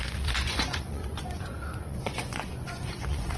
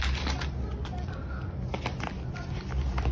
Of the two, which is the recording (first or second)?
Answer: second